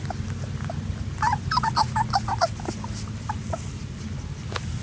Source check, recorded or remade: recorded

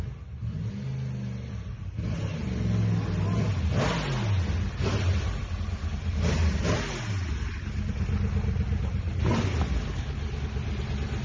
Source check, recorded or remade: recorded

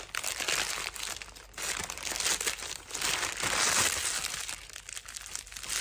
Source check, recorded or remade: recorded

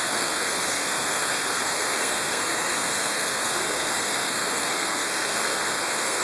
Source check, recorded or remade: remade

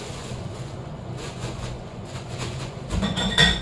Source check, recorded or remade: remade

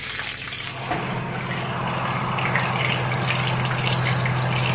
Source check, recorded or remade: recorded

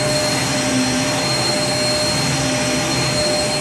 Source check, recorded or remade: recorded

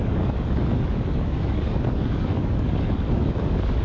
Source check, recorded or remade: remade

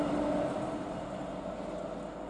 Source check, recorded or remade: recorded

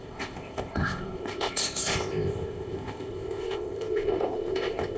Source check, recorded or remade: remade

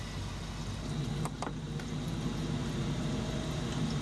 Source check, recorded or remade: recorded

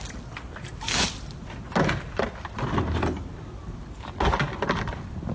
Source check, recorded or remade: recorded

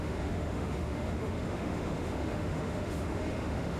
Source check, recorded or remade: remade